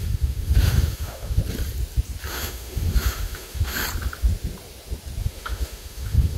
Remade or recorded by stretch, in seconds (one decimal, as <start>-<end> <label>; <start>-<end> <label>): 0.0-1.4 remade; 1.4-2.3 recorded; 2.3-3.8 remade; 3.8-5.2 recorded; 5.2-6.4 remade